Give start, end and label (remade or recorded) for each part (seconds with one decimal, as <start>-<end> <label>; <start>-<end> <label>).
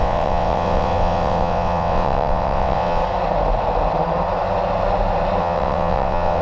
0.0-3.0 remade; 3.0-5.4 recorded; 5.4-6.4 remade